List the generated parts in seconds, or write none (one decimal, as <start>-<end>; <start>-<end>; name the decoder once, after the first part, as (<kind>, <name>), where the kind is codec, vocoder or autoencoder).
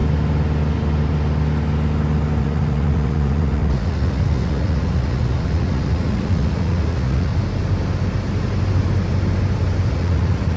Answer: 2.4-7.3 (vocoder, Vocos); 9.9-10.6